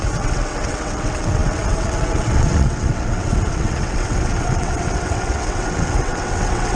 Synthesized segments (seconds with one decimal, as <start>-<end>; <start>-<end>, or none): 0.0-6.7